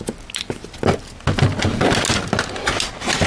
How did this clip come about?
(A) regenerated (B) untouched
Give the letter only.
B